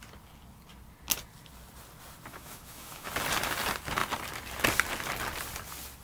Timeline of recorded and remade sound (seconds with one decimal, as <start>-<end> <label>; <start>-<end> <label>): 0.0-2.3 recorded; 2.3-3.1 remade; 3.1-6.0 recorded